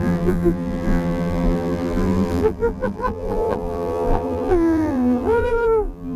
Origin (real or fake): fake